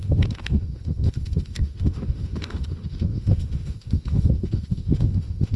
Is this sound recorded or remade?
remade